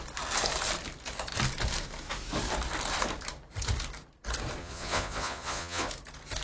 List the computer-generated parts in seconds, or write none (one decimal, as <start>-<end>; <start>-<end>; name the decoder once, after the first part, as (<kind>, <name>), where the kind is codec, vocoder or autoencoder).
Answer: 4.6-5.9 (vocoder, Vocos)